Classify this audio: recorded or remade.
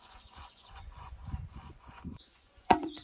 remade